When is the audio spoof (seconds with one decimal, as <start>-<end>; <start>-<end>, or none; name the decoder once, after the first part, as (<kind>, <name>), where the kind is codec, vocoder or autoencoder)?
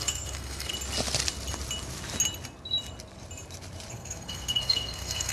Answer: 0.0-0.7 (codec, SNAC); 3.9-5.3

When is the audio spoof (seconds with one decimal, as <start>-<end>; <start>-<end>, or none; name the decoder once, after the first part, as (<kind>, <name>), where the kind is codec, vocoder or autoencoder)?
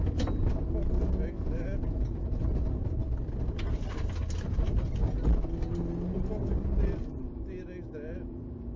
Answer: none